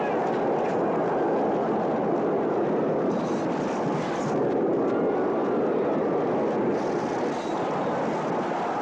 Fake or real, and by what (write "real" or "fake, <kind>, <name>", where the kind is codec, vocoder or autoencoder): real